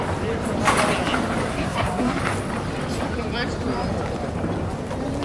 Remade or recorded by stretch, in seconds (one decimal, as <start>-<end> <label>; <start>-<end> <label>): 0.0-1.5 recorded; 1.5-2.2 remade; 2.2-5.2 recorded